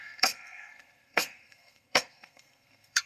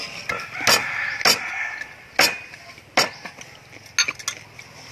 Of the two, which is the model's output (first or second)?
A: first